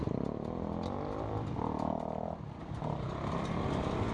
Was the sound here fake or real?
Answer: real